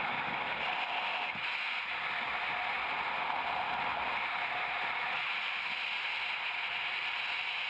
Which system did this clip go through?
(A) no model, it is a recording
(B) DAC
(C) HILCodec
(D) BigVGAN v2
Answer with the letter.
A